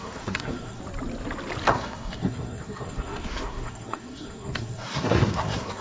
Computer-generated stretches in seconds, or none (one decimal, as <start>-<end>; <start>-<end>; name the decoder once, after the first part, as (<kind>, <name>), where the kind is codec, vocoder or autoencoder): 0.0-0.8 (codec, SNAC); 1.7-5.8

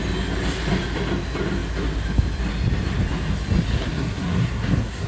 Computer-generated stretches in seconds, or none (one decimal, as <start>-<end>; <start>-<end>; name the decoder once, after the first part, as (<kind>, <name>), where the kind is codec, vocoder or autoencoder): 3.7-5.1 (codec, SNAC)

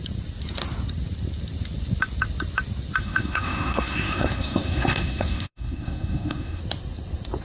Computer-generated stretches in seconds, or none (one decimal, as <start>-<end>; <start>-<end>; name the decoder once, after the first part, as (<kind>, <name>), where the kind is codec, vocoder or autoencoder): 3.0-6.6 (codec, SNAC)

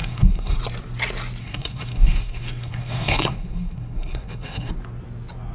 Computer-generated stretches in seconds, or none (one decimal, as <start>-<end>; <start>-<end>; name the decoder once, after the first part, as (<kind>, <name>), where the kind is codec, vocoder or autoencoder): 0.0-0.6 (codec, SNAC); 1.4-4.7

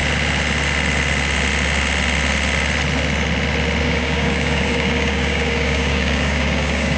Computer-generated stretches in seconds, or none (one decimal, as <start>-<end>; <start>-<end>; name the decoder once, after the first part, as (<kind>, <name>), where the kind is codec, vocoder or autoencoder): 3.8-7.0 (codec, DAC)